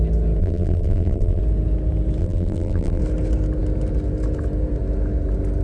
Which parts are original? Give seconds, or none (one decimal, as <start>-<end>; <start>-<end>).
0.0-0.4; 1.4-2.2; 3.0-5.6